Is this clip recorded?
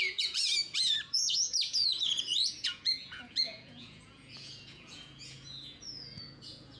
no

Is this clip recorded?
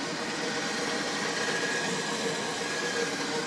yes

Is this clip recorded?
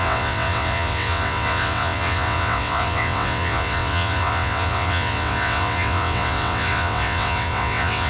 no